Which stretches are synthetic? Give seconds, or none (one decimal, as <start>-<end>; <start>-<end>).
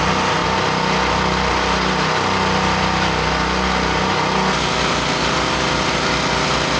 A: none